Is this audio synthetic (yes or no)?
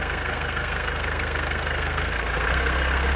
yes